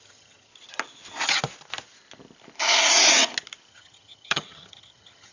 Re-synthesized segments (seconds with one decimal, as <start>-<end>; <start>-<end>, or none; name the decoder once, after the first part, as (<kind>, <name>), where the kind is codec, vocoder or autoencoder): 0.0-0.5 (vocoder, HiFi-GAN); 3.7-5.3